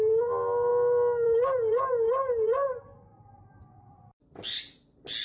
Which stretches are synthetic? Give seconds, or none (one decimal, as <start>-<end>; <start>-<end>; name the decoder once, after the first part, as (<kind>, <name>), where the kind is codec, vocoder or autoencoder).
none